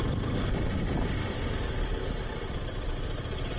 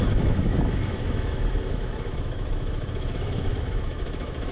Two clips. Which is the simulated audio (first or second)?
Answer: second